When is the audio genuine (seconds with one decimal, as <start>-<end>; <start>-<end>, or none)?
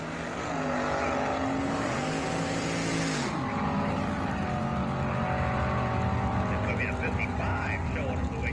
0.0-8.5